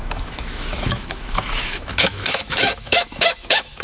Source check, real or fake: fake